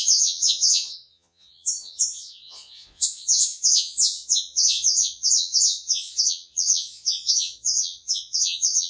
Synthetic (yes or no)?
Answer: yes